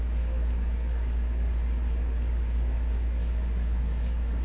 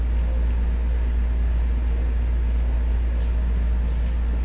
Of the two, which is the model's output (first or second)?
first